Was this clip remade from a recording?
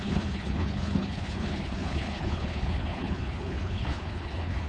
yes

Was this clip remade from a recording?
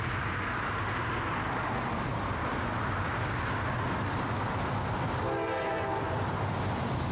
no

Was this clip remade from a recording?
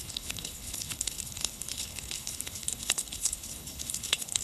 yes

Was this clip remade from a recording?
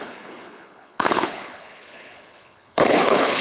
yes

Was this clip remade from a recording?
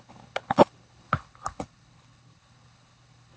yes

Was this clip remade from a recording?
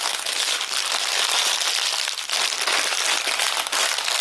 no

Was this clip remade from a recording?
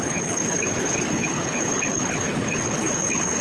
yes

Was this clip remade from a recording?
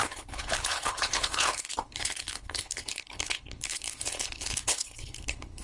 yes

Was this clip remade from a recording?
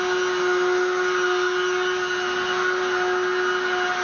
no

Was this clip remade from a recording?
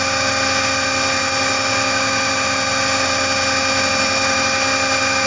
no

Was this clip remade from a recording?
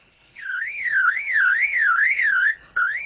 yes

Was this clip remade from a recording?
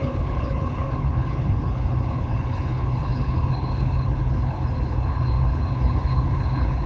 yes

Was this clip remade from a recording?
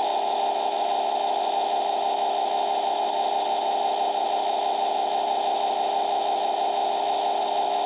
no